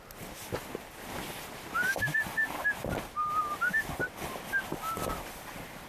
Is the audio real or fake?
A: real